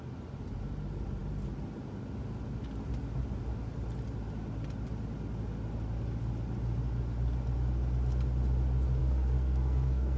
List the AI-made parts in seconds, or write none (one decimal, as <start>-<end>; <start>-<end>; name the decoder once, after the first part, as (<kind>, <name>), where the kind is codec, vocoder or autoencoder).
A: 9.0-10.2 (codec, SNAC)